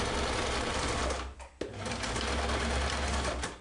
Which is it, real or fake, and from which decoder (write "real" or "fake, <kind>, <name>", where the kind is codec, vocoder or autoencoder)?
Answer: real